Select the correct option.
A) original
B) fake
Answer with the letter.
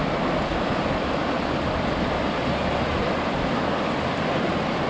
A